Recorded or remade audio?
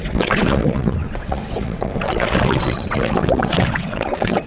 remade